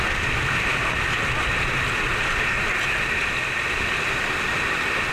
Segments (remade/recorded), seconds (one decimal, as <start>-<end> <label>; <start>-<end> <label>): 0.0-0.7 remade; 0.7-2.9 recorded; 2.9-5.1 remade